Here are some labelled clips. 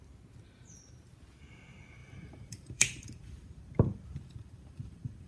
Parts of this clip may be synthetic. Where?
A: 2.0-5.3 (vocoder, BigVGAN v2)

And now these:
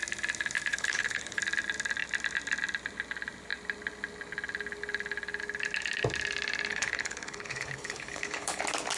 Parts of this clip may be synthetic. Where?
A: 0.7-1.4 (codec, HILCodec); 6.7-8.6

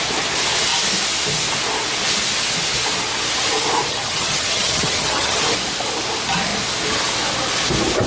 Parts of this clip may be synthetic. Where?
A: 3.9-5.4 (vocoder, HiFi-GAN)